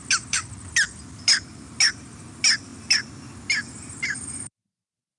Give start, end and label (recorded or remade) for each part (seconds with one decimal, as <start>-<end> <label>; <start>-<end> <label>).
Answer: 0.0-5.2 recorded